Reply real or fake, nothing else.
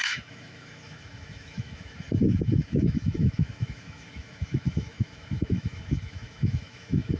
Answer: fake